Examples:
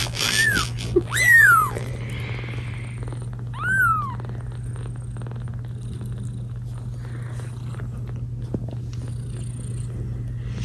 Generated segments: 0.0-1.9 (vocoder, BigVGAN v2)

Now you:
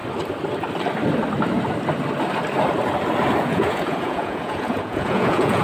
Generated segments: 3.4-5.6 (vocoder, Vocos)

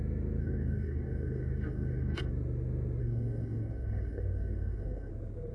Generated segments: 0.4-2.3 (codec, DAC); 3.0-5.1